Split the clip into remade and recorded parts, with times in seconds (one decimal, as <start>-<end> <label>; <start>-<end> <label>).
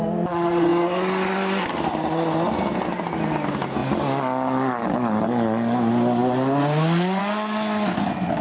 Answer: 0.0-8.4 recorded